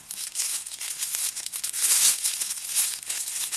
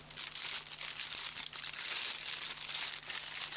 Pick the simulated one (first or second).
first